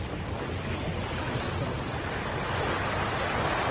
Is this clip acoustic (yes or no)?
yes